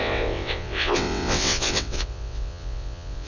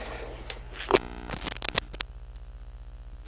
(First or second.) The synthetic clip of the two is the first